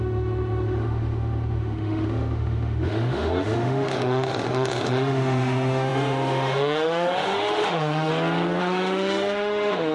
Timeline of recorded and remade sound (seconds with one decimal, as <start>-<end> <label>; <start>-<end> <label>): 0.0-8.1 remade; 8.1-8.6 recorded; 8.6-9.9 remade